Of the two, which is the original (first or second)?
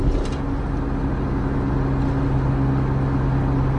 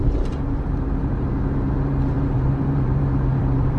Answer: first